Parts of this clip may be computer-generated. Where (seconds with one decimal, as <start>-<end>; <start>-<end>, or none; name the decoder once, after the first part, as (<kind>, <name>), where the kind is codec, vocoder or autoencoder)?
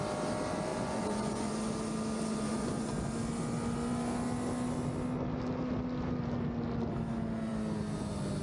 0.7-1.5 (vocoder, Vocos); 2.3-3.1